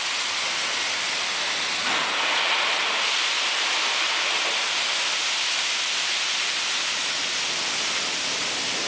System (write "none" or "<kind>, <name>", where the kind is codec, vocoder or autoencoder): none